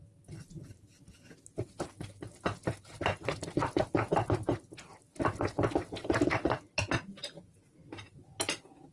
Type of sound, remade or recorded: recorded